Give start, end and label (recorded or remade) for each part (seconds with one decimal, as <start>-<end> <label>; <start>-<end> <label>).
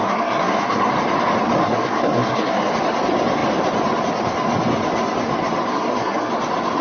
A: 0.0-0.9 remade; 0.9-1.6 recorded; 1.6-2.7 remade; 2.7-5.7 recorded; 5.7-6.3 remade; 6.3-6.8 recorded